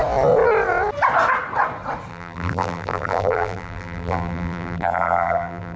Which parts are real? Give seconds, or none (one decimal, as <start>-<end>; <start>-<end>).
0.0-2.1